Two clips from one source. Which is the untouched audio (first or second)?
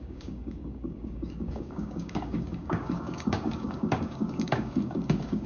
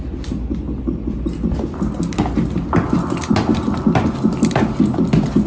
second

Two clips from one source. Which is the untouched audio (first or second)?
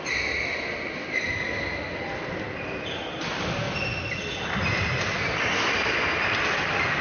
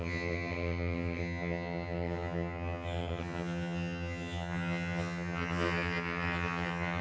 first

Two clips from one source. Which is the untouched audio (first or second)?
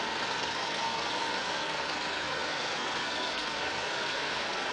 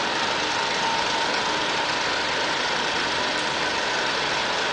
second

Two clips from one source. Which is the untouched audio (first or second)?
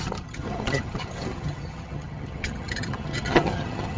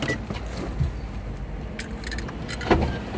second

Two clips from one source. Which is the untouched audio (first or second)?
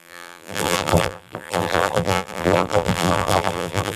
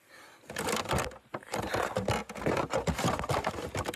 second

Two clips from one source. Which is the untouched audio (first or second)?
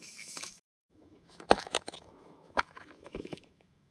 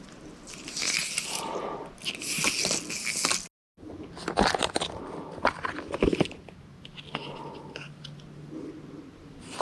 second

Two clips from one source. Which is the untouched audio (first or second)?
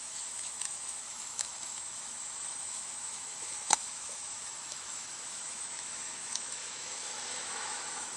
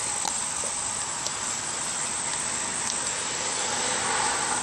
second